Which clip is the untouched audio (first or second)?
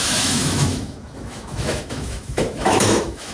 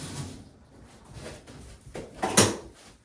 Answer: second